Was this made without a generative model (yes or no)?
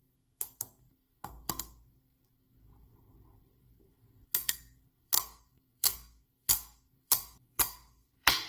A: no